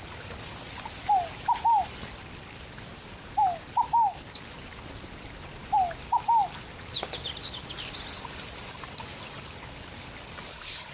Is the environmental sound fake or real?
real